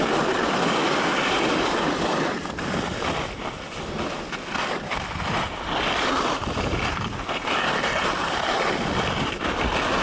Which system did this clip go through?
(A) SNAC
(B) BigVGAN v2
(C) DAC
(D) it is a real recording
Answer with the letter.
D